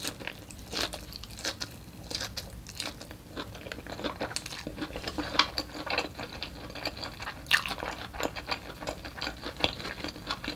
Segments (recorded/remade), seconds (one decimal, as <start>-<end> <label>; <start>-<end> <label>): 0.0-4.7 recorded; 4.7-5.5 remade; 5.5-10.6 recorded